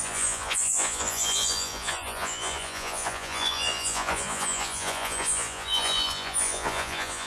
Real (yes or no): no